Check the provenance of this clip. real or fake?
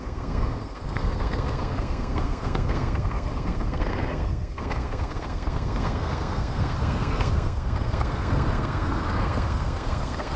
fake